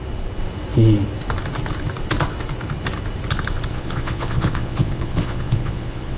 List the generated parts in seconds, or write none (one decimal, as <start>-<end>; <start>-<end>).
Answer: 3.7-6.2